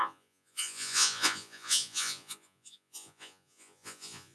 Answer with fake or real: fake